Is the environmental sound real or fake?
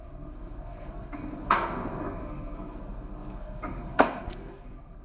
fake